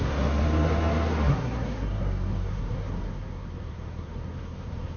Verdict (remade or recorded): remade